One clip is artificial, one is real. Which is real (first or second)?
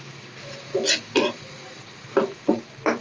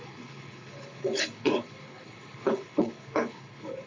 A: first